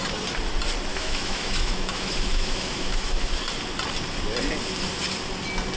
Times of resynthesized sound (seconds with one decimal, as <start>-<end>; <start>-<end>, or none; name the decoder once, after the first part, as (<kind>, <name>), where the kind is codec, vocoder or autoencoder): 0.9-3.3 (autoencoder, DAC-VAE)